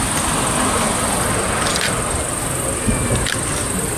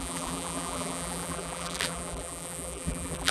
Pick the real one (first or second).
first